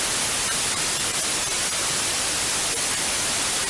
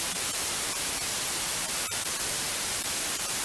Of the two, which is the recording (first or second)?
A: first